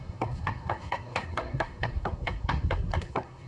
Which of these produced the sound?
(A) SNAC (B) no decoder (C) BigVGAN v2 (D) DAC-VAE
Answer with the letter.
A